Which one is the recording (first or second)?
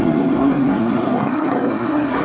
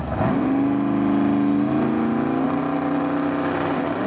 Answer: second